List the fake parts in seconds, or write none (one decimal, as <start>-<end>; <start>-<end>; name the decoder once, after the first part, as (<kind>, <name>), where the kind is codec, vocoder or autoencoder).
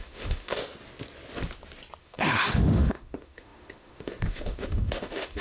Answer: 0.0-0.6 (autoencoder, DAC-VAE); 2.0-5.4